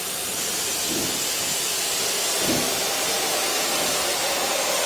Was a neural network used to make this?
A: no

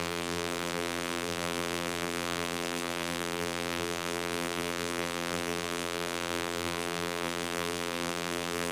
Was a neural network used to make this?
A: yes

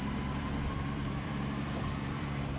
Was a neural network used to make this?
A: yes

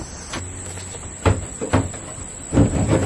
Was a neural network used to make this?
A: yes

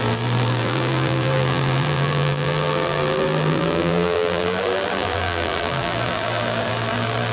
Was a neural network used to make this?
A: yes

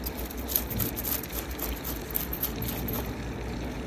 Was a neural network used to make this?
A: no